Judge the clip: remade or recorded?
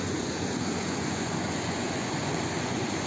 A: remade